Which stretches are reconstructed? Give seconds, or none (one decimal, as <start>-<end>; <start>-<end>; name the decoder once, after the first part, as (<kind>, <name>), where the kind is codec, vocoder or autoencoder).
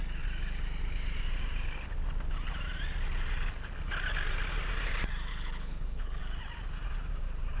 5.3-6.2 (codec, HILCodec)